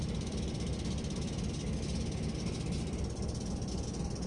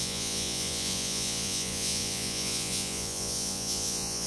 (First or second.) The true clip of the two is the first